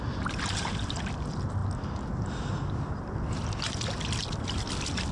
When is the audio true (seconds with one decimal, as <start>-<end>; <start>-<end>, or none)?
0.0-5.1